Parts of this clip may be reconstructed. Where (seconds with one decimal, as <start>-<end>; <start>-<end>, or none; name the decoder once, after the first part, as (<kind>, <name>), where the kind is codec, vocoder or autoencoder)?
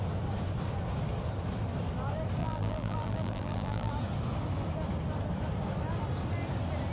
2.4-3.9 (vocoder, BigVGAN v2)